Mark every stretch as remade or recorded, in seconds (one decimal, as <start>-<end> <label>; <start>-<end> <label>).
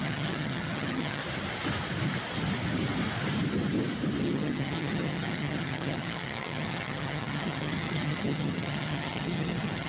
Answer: 0.0-1.2 remade; 1.2-4.2 recorded; 4.2-9.9 remade